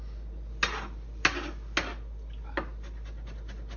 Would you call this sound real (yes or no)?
yes